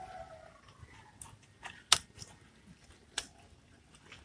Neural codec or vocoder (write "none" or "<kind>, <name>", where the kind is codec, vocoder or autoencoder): none